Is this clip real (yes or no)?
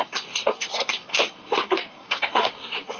no